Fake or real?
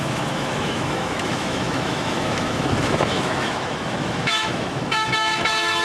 fake